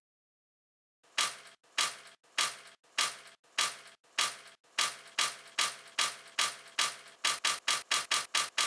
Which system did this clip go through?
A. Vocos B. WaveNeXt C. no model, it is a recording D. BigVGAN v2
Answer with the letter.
C